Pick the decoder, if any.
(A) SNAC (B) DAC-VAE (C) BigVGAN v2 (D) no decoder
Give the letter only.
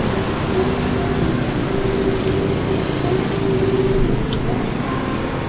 D